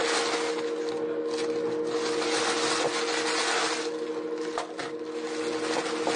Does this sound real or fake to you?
real